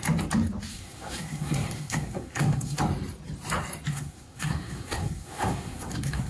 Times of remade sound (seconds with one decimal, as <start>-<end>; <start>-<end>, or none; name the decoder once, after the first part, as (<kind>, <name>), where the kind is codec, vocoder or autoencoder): 0.7-2.8 (codec, SNAC); 3.9-6.3